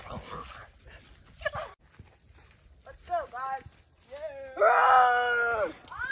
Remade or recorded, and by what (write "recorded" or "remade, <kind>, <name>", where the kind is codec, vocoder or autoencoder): recorded